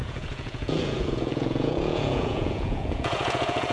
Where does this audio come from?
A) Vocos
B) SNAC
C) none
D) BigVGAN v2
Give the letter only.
A